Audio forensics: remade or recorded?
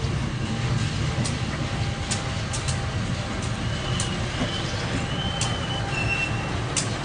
recorded